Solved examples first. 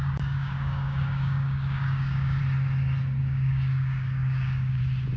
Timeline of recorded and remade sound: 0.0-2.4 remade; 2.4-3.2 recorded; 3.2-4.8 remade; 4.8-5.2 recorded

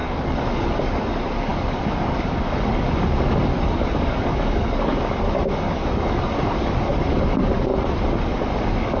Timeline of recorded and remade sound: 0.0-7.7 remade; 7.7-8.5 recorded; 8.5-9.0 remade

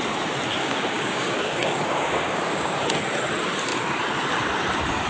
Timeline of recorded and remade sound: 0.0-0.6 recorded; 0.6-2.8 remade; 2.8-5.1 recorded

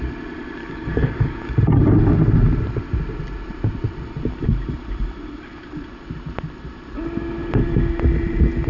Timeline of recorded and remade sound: 0.0-0.6 recorded; 0.6-1.5 remade; 1.5-8.7 recorded

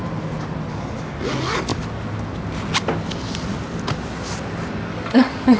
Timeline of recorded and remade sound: 0.0-0.7 recorded; 0.7-1.7 remade; 1.7-4.8 recorded; 4.8-5.6 remade

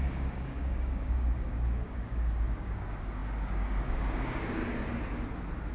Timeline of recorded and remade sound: 0.0-4.6 remade; 4.6-5.7 recorded

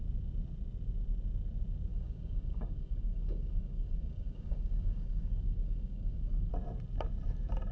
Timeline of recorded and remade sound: 0.0-1.9 recorded; 1.9-6.5 remade; 6.5-7.7 recorded

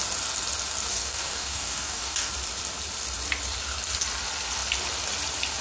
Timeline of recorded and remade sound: 0.0-0.9 recorded; 0.9-2.3 remade; 2.3-5.6 recorded